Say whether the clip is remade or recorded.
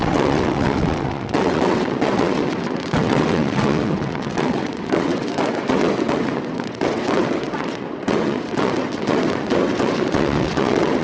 remade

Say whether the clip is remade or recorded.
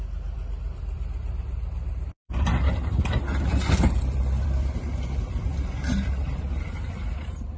remade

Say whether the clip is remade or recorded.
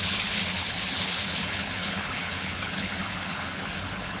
remade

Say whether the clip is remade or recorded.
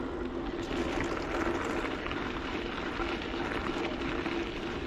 recorded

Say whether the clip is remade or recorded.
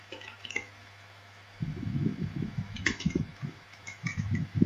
remade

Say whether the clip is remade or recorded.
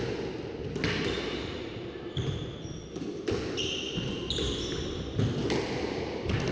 recorded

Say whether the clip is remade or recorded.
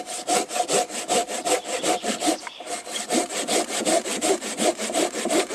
remade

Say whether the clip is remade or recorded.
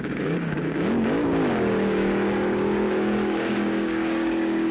remade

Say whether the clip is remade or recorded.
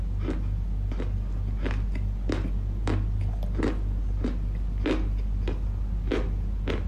recorded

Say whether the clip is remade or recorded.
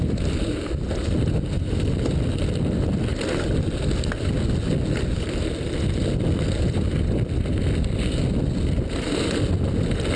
recorded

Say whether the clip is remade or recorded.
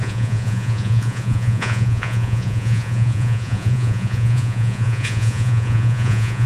remade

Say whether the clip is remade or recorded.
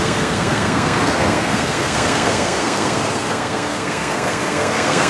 remade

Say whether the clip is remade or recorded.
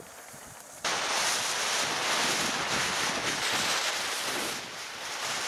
remade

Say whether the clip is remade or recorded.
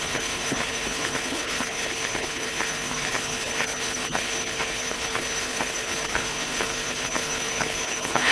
remade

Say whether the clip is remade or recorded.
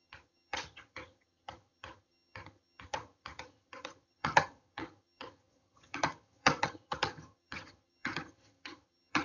remade